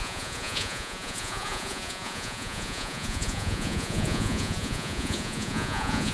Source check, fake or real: fake